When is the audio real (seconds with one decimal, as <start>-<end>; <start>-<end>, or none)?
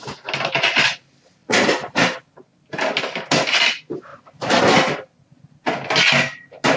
0.0-1.4; 2.0-4.1; 4.6-6.8